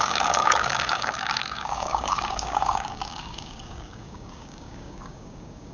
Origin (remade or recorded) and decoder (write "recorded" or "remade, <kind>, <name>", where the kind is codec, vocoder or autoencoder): remade, codec, DAC